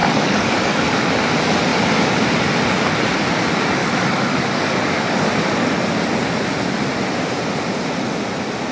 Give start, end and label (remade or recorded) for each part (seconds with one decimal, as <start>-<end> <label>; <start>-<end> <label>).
0.0-1.2 remade; 1.2-3.8 recorded; 3.8-5.3 remade; 5.3-8.7 recorded